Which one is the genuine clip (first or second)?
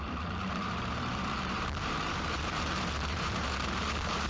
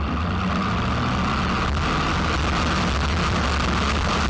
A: second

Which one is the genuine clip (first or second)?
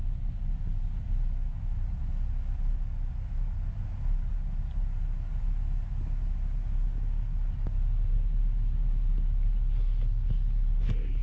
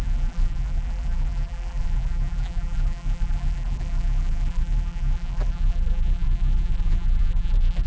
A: first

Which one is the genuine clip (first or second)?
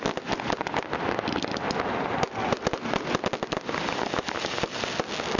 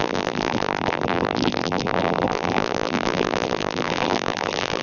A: first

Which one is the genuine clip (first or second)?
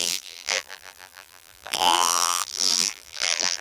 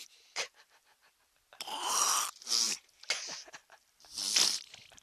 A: second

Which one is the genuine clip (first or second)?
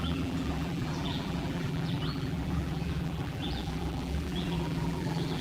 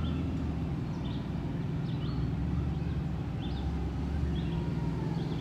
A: second